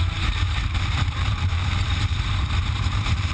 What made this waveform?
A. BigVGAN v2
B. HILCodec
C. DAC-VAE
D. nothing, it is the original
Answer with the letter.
A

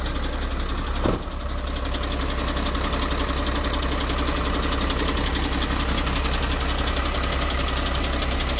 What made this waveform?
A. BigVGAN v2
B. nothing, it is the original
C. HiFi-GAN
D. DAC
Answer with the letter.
B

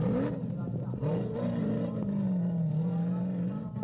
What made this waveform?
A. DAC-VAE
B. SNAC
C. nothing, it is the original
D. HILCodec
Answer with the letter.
C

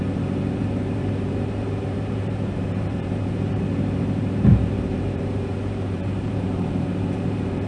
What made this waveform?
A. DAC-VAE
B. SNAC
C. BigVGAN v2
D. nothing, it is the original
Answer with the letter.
C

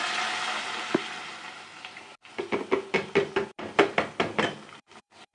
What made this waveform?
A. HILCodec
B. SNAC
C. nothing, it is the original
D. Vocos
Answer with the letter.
C